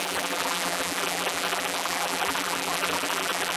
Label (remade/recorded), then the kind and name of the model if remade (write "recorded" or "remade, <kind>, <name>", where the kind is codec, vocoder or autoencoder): remade, vocoder, BigVGAN v2